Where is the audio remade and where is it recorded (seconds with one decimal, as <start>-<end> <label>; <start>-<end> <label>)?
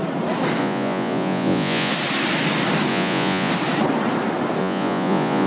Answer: 0.0-0.6 recorded; 0.6-1.9 remade; 1.9-2.9 recorded; 2.9-3.5 remade; 3.5-4.6 recorded; 4.6-5.5 remade